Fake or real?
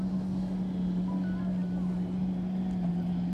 real